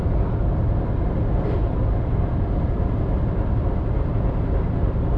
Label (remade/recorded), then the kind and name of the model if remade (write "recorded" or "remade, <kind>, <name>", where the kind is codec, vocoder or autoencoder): recorded